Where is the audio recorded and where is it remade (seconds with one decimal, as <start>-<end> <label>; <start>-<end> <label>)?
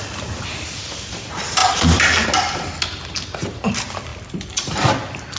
0.0-5.4 recorded